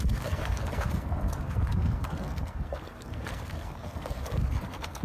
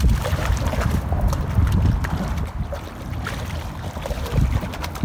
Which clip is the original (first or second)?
second